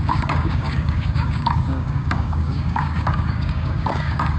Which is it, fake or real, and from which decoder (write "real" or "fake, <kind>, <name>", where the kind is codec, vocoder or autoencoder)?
fake, codec, DAC